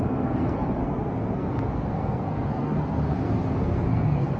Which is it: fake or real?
fake